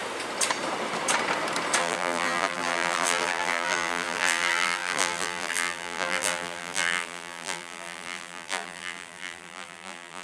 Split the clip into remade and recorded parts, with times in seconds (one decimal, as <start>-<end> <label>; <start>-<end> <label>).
0.0-1.8 recorded; 1.8-10.2 remade